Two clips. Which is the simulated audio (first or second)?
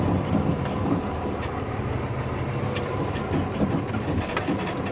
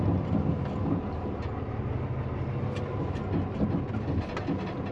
first